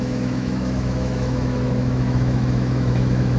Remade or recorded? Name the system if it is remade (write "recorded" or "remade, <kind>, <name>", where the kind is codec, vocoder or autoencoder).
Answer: remade, autoencoder, DAC-VAE